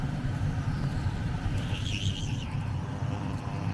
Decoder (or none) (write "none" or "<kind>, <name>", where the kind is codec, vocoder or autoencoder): vocoder, BigVGAN v2